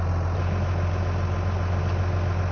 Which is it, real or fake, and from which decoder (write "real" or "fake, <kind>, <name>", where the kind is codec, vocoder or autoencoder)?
real